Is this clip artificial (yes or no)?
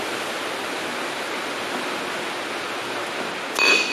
no